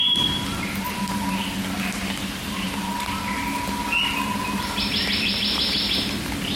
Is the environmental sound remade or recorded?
recorded